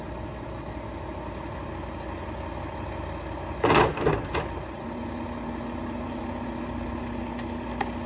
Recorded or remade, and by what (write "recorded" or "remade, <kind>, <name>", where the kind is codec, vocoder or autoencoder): recorded